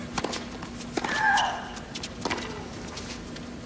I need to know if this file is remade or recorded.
recorded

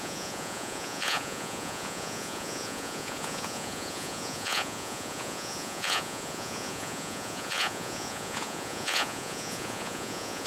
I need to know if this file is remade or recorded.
remade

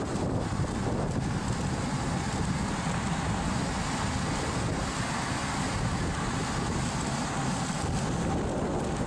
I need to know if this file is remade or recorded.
recorded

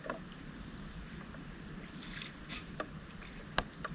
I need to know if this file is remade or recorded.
recorded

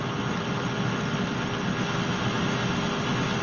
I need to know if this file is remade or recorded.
recorded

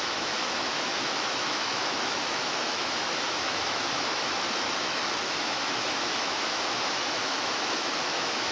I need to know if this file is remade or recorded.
remade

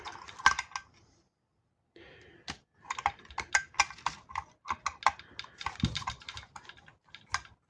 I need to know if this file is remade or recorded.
recorded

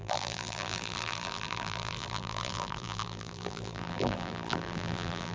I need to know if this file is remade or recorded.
remade